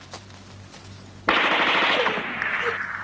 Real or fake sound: real